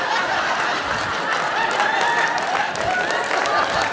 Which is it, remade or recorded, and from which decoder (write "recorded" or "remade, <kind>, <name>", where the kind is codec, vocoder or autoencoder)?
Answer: recorded